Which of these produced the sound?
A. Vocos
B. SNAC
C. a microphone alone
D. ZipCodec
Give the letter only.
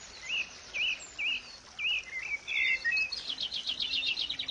C